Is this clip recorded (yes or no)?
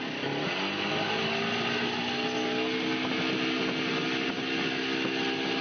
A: yes